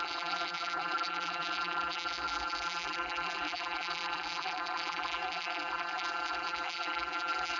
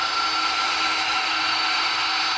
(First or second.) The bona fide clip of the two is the second